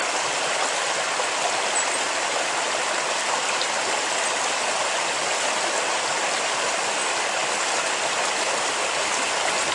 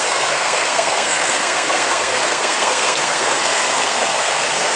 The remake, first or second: second